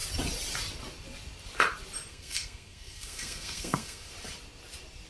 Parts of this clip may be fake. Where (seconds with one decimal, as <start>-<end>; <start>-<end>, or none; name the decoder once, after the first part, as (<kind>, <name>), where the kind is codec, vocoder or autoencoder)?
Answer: 2.1-4.1 (codec, SNAC)